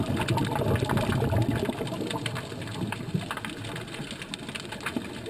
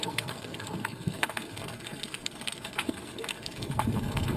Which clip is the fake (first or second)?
second